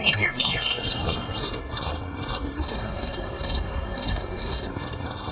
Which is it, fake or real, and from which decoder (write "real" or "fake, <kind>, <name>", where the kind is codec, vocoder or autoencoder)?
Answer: fake, codec, SNAC